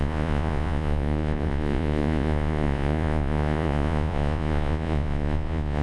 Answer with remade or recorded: remade